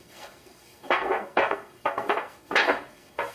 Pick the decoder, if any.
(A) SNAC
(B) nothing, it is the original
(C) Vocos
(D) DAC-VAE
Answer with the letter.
A